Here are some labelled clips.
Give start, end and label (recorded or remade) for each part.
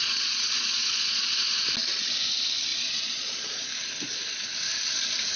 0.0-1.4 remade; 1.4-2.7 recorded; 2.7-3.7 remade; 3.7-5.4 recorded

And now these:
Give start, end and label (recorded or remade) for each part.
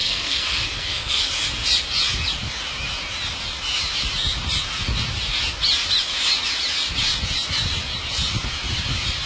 0.0-1.3 remade; 1.3-9.3 recorded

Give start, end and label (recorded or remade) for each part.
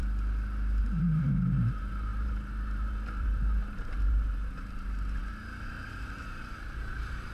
0.0-0.8 recorded; 0.8-7.3 remade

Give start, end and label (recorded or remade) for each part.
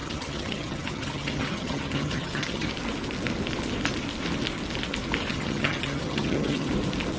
0.0-2.7 remade; 2.7-5.3 recorded; 5.3-6.7 remade; 6.7-7.2 recorded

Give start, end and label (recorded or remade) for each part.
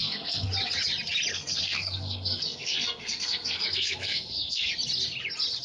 0.0-0.5 remade; 0.5-1.3 recorded; 1.3-4.7 remade; 4.7-5.6 recorded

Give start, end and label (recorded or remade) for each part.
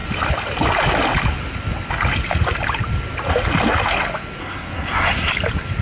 0.0-4.4 recorded; 4.4-5.3 remade; 5.3-5.8 recorded